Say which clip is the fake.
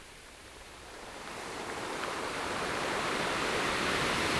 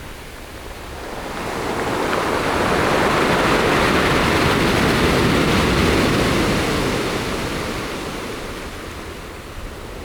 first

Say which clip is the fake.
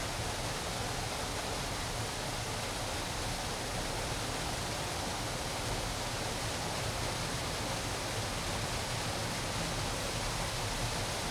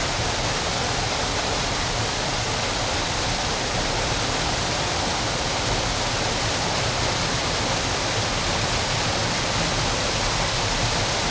second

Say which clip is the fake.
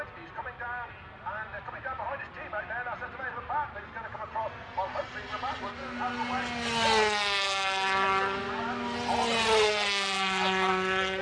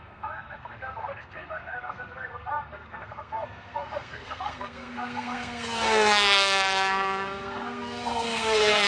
second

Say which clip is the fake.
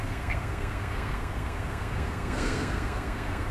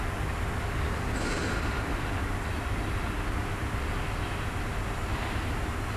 first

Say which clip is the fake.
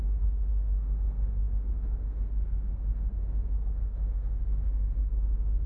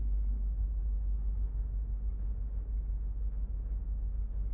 first